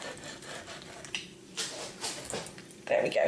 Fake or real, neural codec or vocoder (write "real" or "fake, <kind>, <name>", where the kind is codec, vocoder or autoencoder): real